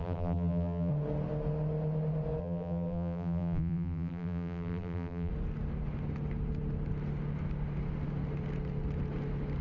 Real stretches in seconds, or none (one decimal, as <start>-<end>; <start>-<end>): 0.9-2.4; 5.3-9.6